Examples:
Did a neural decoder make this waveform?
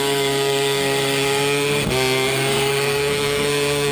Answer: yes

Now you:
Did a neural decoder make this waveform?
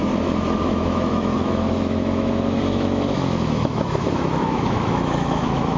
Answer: yes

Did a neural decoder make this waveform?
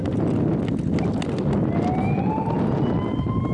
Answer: no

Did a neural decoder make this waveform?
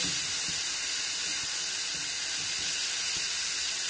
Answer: no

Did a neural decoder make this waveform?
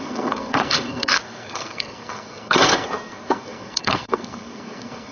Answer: yes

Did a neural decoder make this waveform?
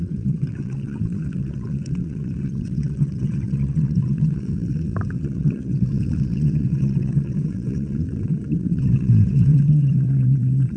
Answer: yes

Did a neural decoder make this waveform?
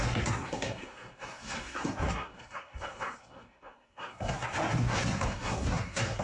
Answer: yes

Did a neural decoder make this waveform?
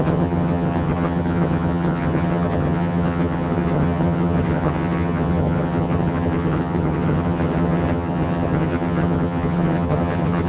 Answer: yes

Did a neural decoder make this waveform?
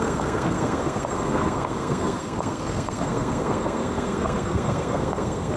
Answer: yes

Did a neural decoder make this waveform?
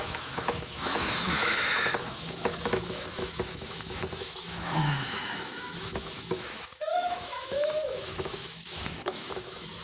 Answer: yes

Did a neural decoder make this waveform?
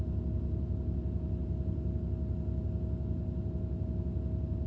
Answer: no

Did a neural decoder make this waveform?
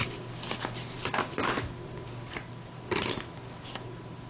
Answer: no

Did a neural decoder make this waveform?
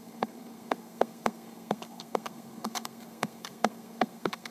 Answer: yes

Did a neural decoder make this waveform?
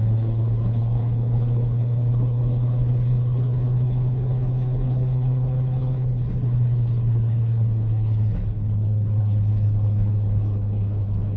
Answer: yes